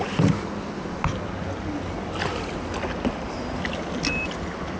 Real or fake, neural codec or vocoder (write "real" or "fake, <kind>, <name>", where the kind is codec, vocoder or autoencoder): real